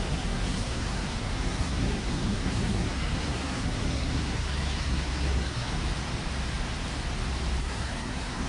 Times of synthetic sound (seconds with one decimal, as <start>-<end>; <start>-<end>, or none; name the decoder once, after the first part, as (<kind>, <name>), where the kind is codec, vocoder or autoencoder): 0.0-5.8 (codec, SNAC); 7.6-8.5